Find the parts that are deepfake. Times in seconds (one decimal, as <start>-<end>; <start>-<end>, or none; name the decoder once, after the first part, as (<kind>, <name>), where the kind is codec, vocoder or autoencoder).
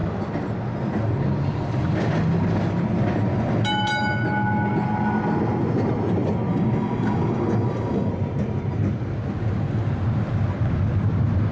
6.5-8.1 (codec, DAC)